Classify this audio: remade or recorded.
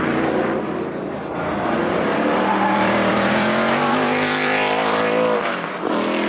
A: remade